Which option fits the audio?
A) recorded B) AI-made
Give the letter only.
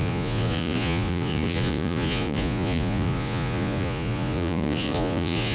B